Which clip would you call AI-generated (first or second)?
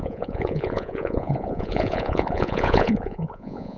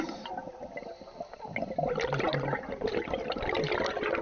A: first